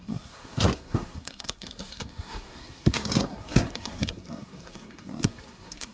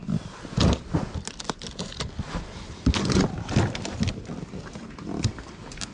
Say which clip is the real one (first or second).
second